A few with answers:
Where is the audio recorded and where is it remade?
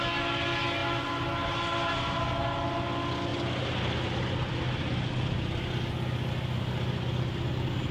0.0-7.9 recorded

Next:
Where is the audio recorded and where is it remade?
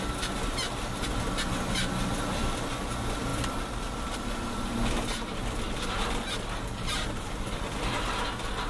0.0-8.7 recorded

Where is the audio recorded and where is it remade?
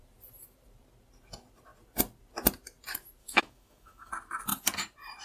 0.0-3.2 recorded; 3.2-4.1 remade; 4.1-5.2 recorded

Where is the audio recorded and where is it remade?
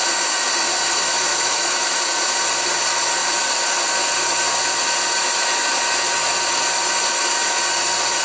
0.0-1.3 recorded; 1.3-2.0 remade; 2.0-8.2 recorded